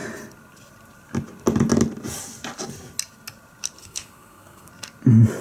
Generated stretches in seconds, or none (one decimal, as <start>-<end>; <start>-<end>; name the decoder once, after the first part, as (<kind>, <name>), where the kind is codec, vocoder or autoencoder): 3.8-4.7 (codec, SNAC)